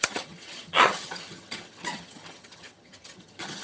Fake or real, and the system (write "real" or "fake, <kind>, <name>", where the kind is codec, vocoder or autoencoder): fake, vocoder, HiFi-GAN